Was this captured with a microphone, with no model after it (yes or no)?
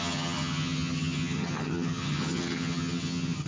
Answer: no